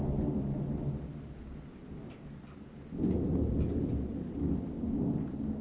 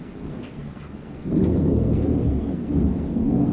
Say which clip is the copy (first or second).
second